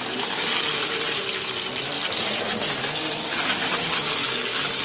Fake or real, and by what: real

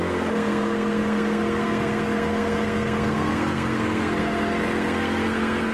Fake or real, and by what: fake, codec, SNAC